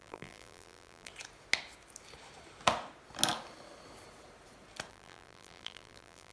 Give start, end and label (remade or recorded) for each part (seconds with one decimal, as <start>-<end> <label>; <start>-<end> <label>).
0.0-1.1 remade; 1.1-4.9 recorded; 4.9-6.3 remade